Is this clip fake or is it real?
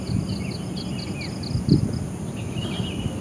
real